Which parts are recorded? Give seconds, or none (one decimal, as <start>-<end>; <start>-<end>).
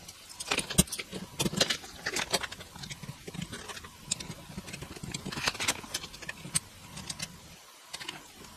0.0-8.6